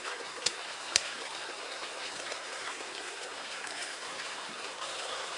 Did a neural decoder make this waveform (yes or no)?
yes